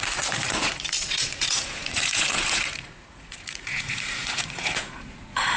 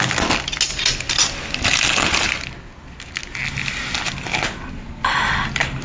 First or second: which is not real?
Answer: first